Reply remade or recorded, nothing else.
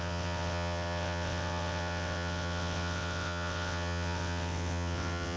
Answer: remade